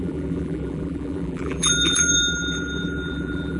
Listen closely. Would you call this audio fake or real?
fake